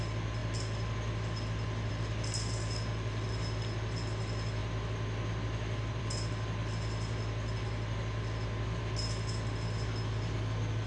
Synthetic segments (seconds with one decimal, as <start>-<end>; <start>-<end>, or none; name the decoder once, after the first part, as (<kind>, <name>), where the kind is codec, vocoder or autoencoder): 0.0-10.9 (vocoder, BigVGAN v2)